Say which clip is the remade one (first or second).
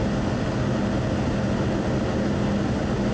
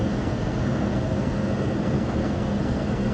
second